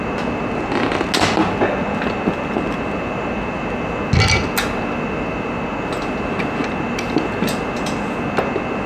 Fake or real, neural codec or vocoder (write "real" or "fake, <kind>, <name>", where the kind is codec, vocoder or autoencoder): real